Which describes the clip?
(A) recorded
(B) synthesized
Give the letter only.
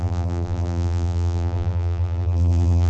B